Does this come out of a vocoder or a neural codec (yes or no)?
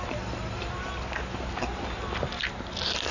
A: no